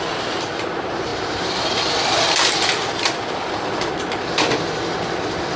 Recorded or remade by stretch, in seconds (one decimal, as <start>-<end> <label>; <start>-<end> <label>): 0.0-5.6 remade